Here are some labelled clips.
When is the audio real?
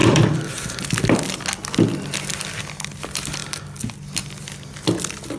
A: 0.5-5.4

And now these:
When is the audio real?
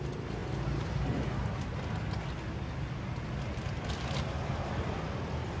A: 0.0-5.6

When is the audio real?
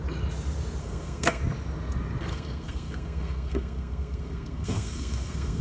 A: 0.0-0.8; 1.4-2.3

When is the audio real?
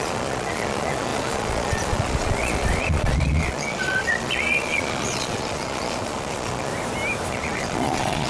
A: 6.7-7.3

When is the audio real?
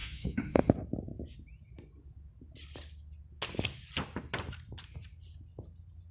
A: 0.7-6.1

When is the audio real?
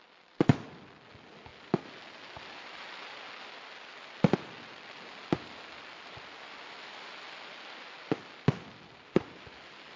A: 0.0-10.0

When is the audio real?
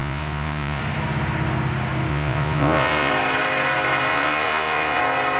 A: 0.8-2.1; 3.1-4.1; 5.0-5.4